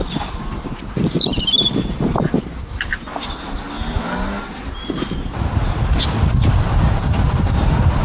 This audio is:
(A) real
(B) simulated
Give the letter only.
A